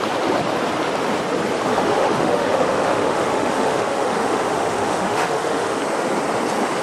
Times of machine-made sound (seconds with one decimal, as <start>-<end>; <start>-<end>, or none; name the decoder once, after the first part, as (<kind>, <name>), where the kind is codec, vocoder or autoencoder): 1.7-5.8 (autoencoder, DAC-VAE)